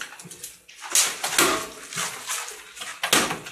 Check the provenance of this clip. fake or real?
real